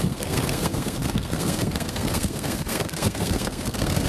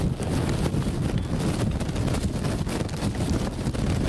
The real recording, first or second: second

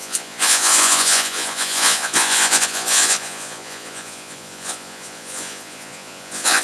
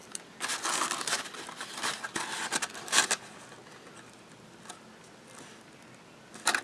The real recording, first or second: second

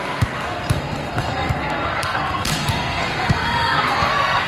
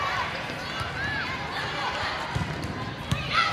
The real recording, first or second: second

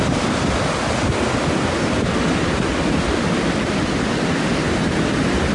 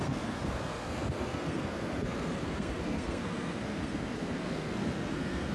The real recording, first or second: first